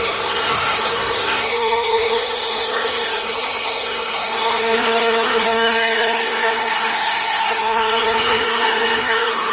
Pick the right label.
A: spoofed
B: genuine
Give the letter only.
A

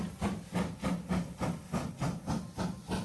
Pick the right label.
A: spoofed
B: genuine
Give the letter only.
B